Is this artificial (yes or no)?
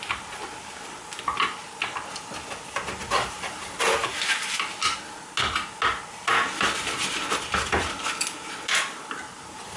no